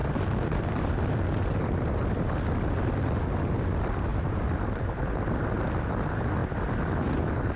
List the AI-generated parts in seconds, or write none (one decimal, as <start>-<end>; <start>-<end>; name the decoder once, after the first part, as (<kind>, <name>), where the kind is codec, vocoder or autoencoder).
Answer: 0.0-0.9 (vocoder, BigVGAN v2); 4.1-5.2